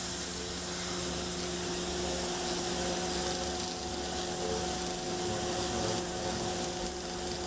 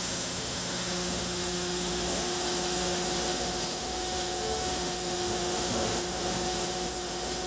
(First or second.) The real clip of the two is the first